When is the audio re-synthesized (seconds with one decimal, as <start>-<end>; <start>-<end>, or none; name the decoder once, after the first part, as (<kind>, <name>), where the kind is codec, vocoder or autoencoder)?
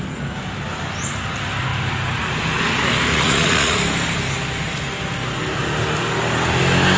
3.1-3.8 (vocoder, Vocos)